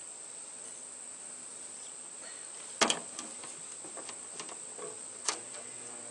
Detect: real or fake real